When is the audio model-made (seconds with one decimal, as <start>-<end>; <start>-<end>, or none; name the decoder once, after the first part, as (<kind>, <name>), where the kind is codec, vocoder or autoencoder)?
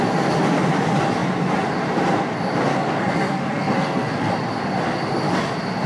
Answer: 2.7-4.3 (codec, SNAC)